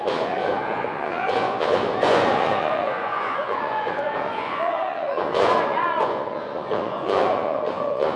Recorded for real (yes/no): no